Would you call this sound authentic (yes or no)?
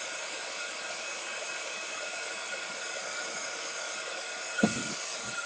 no